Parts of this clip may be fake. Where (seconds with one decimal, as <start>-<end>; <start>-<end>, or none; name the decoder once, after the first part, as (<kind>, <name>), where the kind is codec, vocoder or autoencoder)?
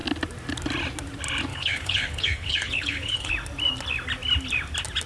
1.5-3.3 (codec, HILCodec)